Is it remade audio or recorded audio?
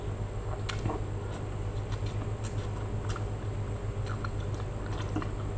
recorded